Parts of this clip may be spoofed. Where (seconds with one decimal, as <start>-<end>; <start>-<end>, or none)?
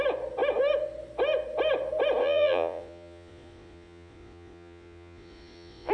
2.2-5.9